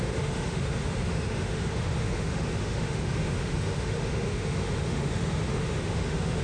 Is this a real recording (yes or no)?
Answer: no